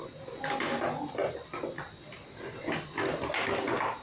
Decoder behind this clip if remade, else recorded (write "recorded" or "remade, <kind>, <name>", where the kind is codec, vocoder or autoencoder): recorded